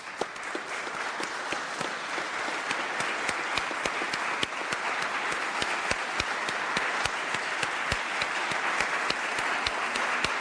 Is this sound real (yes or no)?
yes